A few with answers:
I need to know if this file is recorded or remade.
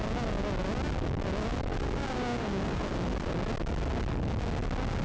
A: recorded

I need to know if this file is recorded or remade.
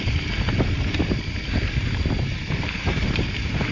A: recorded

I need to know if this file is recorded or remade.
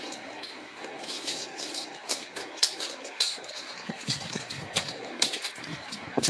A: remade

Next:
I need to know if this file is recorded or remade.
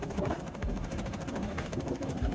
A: remade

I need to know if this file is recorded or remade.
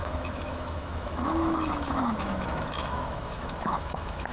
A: remade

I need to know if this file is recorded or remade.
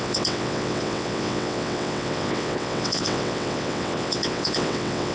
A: remade